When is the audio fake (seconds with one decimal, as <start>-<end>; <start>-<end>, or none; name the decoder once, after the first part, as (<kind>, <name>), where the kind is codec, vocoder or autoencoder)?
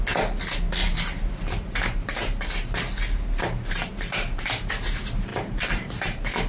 0.8-4.7 (vocoder, BigVGAN v2); 5.3-6.5